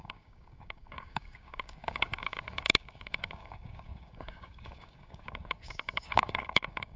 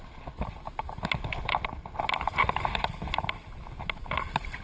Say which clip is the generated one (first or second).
first